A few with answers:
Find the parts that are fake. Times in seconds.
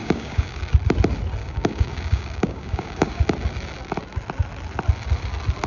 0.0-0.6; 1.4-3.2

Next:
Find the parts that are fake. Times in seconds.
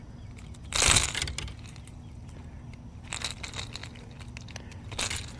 none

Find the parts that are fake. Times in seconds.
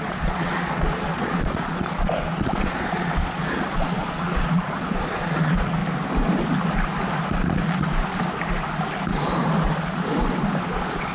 0.0-5.8; 10.6-11.1